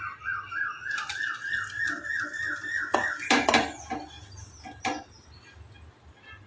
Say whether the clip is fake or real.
real